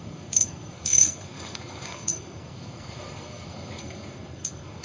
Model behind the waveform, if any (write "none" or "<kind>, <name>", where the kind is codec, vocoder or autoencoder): codec, SNAC